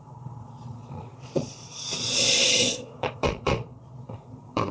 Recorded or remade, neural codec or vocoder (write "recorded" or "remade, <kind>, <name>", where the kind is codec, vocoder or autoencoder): remade, vocoder, Vocos